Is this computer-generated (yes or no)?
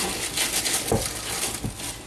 no